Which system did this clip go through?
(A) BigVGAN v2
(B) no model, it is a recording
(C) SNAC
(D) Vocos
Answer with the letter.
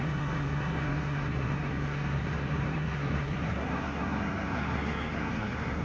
C